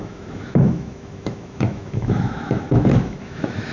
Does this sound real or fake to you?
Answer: fake